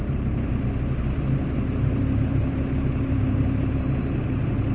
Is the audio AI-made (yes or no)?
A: yes